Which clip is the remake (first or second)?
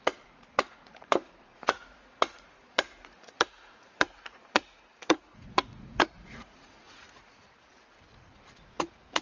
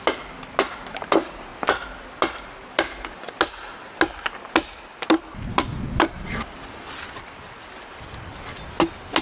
first